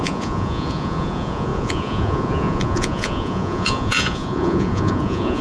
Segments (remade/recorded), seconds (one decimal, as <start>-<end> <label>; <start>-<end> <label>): 0.0-5.4 remade